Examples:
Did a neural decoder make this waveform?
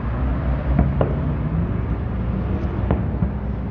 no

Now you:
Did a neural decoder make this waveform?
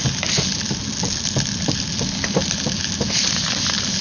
no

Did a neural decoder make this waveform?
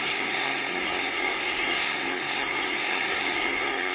yes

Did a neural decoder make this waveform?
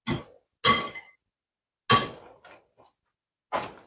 no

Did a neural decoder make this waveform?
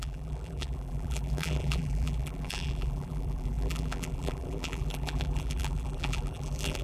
yes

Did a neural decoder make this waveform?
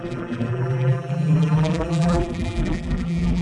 yes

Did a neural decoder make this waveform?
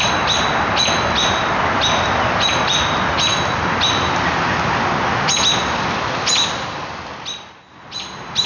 no